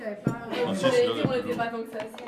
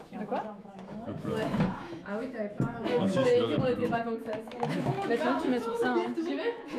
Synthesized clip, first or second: second